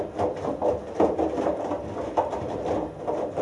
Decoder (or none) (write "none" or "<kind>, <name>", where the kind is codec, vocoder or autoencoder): none